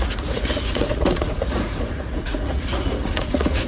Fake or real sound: fake